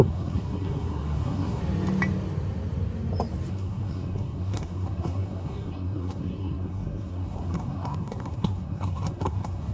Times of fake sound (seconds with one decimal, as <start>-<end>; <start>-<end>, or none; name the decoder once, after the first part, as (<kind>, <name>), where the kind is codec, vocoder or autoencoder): 0.0-1.6 (codec, SNAC); 3.5-9.7